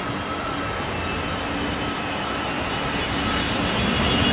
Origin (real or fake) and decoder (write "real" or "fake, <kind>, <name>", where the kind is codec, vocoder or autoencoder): fake, vocoder, BigVGAN v2